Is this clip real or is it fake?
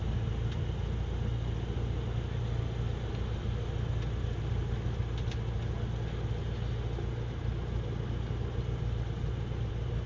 real